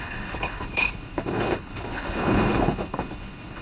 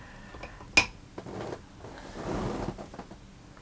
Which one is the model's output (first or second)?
first